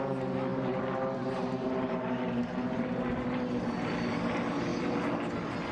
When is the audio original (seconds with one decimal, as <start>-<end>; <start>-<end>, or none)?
0.0-0.5; 3.9-5.7